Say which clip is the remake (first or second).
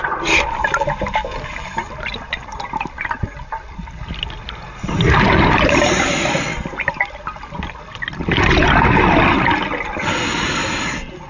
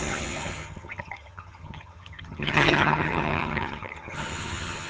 second